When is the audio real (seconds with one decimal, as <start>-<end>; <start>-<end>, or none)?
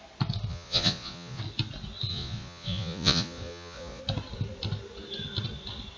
0.0-0.5; 1.4-2.1; 4.0-6.0